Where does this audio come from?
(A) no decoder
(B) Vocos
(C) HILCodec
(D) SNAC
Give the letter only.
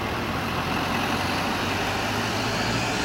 A